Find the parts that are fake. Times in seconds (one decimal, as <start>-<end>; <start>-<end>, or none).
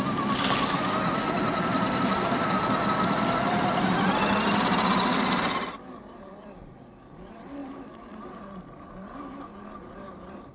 none